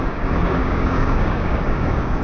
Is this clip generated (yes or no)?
yes